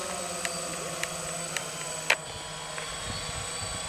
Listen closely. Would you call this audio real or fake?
real